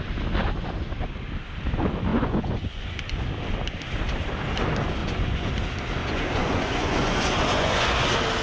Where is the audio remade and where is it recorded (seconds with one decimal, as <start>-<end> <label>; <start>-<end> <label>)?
0.0-2.1 recorded; 2.1-3.0 remade; 3.0-5.0 recorded; 5.0-5.5 remade; 5.5-6.0 recorded; 6.0-7.9 remade; 7.9-8.4 recorded

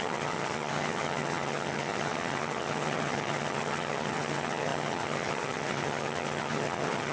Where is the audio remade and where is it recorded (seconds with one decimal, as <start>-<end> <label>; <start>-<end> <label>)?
0.0-7.1 remade

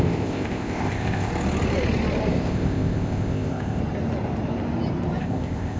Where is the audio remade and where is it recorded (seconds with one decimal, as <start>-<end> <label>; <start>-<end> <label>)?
0.0-1.3 remade; 1.3-2.3 recorded; 2.3-3.8 remade; 3.8-5.2 recorded; 5.2-5.8 remade